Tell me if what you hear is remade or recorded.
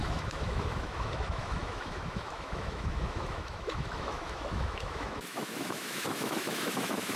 remade